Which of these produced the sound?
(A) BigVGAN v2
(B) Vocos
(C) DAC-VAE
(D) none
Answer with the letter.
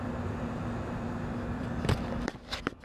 A